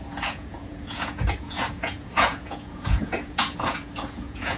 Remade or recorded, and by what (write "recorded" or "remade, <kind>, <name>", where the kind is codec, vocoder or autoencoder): remade, vocoder, Vocos